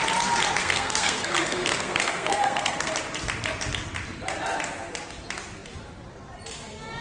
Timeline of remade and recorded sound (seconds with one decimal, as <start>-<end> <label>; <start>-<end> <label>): 0.0-0.6 recorded; 0.6-2.9 remade; 2.9-7.0 recorded